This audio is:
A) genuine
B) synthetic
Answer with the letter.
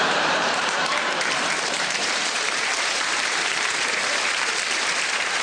B